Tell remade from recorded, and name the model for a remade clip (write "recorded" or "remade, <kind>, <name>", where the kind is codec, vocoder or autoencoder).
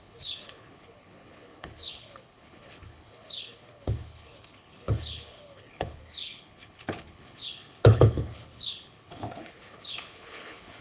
remade, codec, HILCodec